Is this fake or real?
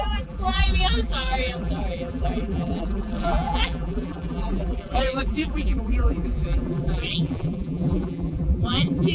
fake